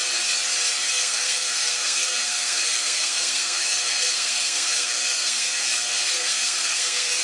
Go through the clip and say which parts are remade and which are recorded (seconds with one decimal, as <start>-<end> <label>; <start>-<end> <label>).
0.0-0.9 recorded; 0.9-7.2 remade